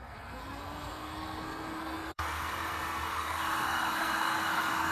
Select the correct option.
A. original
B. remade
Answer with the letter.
B